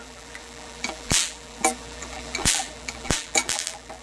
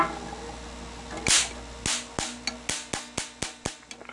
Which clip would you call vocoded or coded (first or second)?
first